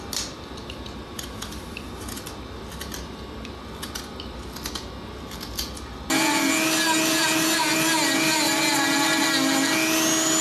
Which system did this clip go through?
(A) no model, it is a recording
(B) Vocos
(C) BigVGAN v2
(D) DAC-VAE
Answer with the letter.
A